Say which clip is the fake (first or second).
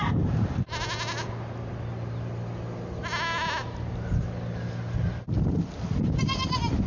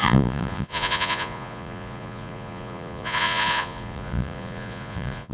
second